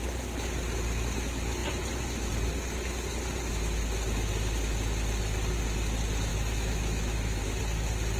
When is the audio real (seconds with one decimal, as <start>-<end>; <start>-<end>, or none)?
0.0-6.3; 7.6-8.2